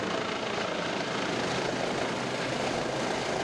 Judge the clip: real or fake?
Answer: real